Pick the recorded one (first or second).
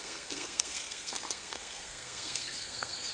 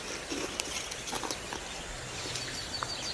second